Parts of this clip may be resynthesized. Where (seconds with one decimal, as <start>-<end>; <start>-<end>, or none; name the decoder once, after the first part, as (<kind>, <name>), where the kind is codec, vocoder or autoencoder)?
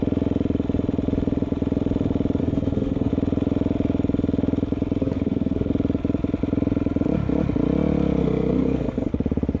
2.4-3.1 (codec, SNAC); 5.0-5.7; 8.2-9.1